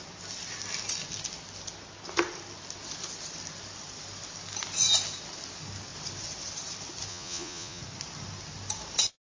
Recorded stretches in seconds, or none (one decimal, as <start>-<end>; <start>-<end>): 0.0-7.1; 7.8-9.2